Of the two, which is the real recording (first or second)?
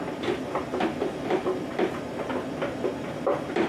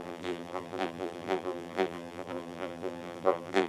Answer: first